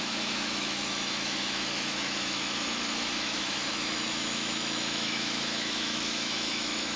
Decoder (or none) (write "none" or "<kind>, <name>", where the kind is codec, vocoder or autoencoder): autoencoder, DAC-VAE